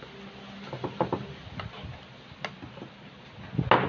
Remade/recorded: recorded